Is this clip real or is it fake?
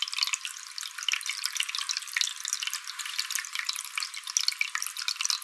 real